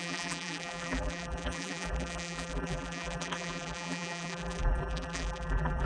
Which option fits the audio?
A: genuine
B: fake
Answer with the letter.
B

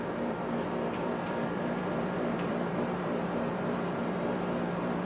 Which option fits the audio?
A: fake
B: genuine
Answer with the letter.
A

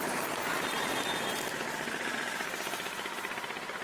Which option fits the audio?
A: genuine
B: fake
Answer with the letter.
A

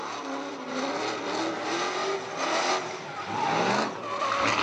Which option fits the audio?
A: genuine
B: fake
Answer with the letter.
A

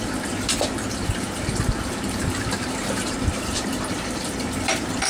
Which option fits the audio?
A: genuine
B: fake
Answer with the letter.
B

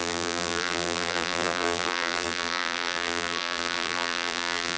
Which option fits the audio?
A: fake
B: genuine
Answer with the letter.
A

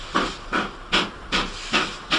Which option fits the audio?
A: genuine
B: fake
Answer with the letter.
A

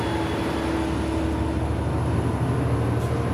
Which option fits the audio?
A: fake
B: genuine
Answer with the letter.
B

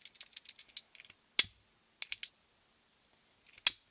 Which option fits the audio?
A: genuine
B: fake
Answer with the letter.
A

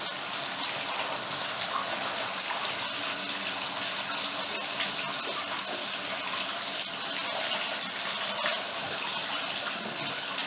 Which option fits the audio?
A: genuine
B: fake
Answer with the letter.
A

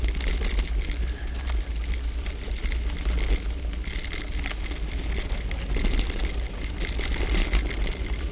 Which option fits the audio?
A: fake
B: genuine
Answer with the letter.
B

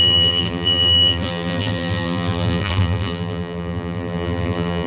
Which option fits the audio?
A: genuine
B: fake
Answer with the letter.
B